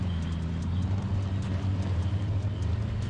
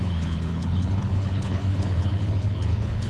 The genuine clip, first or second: first